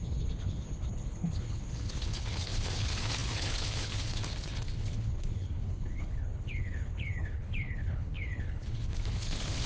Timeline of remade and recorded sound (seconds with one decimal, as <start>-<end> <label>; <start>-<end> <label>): 0.0-9.7 remade